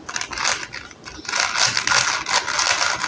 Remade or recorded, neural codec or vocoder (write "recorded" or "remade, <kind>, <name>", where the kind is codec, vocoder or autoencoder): recorded